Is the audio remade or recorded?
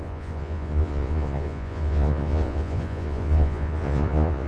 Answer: remade